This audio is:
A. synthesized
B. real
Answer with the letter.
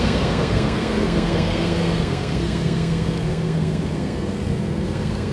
A